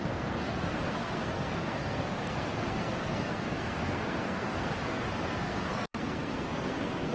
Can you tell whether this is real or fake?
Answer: fake